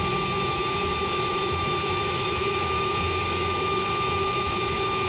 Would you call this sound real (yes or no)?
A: no